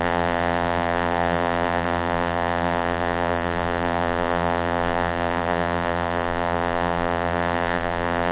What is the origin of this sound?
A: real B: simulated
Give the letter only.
B